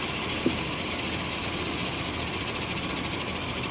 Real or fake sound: real